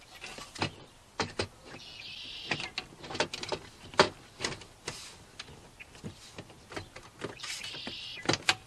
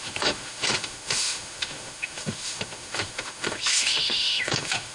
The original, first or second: first